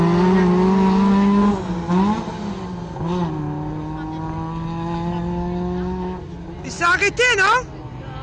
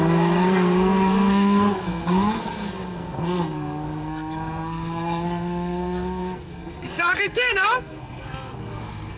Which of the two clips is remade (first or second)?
second